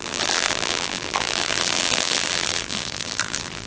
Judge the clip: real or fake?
fake